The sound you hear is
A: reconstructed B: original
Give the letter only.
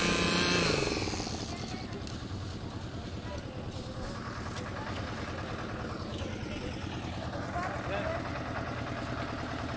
B